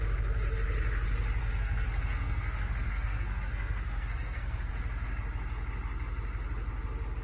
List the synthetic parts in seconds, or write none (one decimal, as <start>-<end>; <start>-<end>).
1.4-4.7